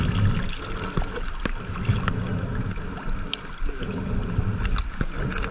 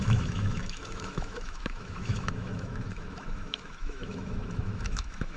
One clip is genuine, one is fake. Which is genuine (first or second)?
first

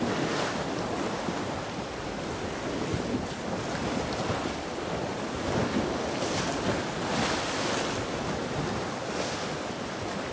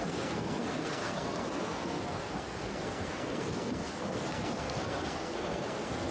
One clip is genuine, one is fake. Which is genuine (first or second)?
first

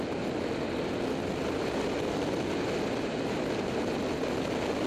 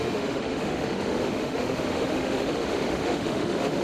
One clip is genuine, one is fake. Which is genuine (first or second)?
first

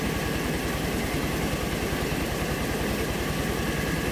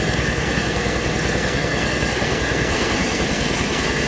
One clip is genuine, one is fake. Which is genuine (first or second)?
first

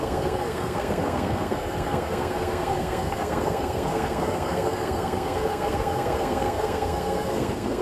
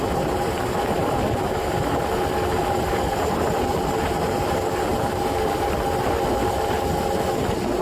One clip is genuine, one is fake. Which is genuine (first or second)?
second